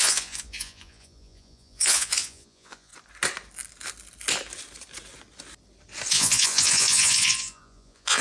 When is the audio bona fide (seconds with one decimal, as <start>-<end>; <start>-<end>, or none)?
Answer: 2.9-6.1